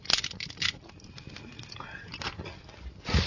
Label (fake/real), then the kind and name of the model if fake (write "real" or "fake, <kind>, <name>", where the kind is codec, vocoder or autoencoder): real